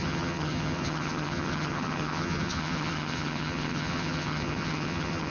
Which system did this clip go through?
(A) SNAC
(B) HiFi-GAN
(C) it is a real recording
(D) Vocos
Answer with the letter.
B